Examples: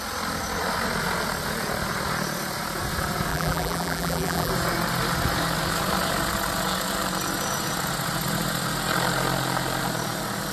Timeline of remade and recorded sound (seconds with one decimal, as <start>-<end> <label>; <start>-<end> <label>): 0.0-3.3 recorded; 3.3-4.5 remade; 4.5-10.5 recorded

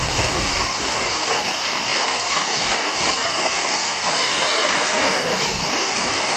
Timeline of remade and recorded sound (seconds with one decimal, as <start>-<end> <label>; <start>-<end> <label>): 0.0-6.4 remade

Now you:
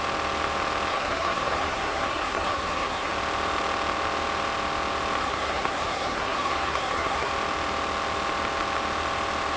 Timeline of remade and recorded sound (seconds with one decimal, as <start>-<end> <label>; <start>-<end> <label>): 0.0-0.9 recorded; 0.9-3.1 remade; 3.1-5.2 recorded; 5.2-7.3 remade; 7.3-9.6 recorded